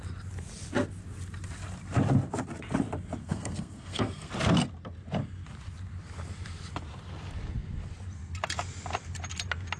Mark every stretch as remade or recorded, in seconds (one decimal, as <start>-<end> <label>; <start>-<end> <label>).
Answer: 0.0-3.2 recorded; 3.2-4.3 remade; 4.3-9.8 recorded